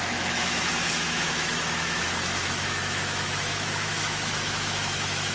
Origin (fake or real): fake